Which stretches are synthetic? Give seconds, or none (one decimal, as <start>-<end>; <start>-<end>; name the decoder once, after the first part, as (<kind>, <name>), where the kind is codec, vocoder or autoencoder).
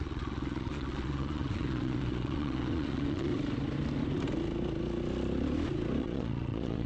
0.0-3.3 (vocoder, Vocos); 6.0-6.9